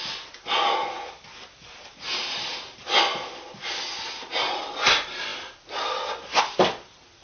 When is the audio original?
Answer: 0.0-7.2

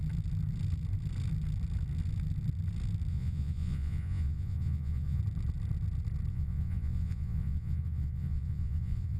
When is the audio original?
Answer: 0.0-3.1; 5.2-6.3

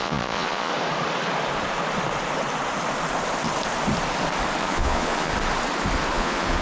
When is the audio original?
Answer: 0.7-4.6; 5.3-6.1

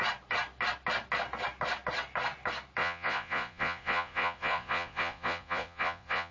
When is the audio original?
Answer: 0.0-2.8

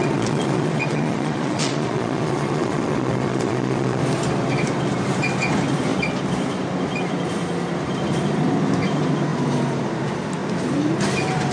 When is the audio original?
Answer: 4.0-11.5